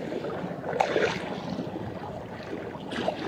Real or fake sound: real